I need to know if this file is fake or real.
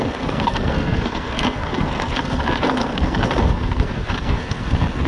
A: fake